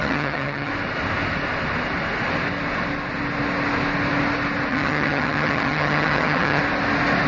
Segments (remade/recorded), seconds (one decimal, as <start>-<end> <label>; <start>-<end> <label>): 0.0-0.7 remade; 0.7-4.7 recorded; 4.7-6.6 remade; 6.6-7.3 recorded